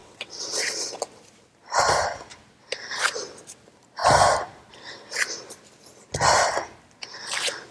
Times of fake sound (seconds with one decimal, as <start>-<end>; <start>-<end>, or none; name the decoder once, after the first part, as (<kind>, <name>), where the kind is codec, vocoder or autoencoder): 0.0-1.0 (vocoder, WaveNeXt)